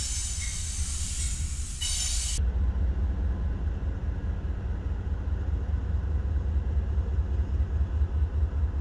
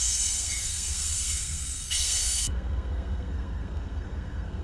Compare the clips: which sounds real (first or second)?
first